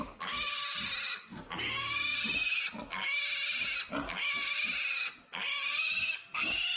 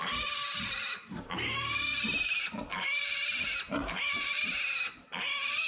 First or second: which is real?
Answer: first